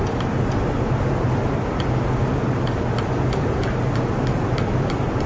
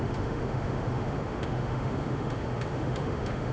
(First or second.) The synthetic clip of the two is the second